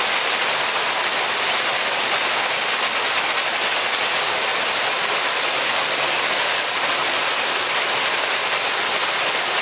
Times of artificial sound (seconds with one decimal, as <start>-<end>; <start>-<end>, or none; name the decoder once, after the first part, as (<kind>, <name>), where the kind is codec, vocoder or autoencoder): none